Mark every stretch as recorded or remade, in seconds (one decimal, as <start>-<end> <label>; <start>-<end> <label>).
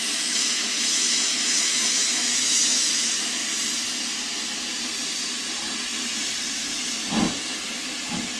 0.0-3.4 remade; 3.4-8.4 recorded